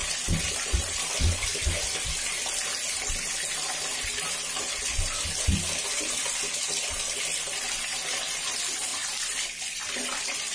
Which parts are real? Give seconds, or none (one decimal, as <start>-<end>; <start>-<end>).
0.0-8.9; 9.9-10.5